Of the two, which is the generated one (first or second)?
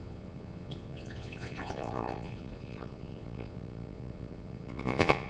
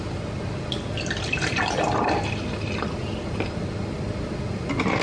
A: first